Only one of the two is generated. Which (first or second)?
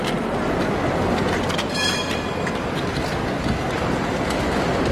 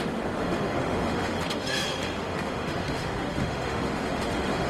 second